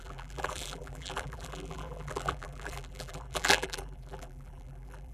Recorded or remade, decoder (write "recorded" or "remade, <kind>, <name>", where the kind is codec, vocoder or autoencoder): remade, vocoder, BigVGAN v2